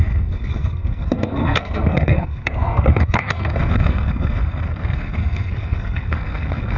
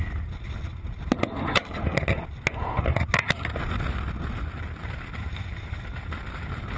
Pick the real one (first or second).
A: second